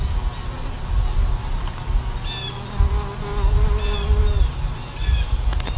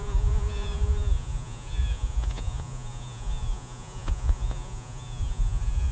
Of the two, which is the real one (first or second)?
first